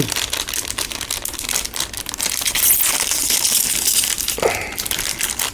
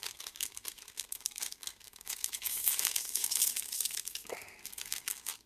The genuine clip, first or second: first